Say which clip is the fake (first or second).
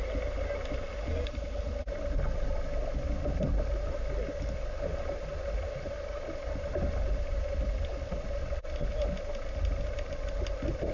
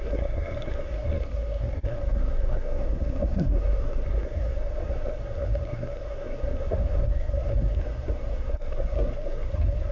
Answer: second